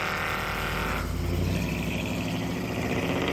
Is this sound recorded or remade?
recorded